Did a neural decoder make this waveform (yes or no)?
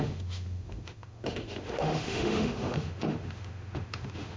yes